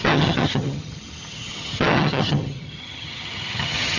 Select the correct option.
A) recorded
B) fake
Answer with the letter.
B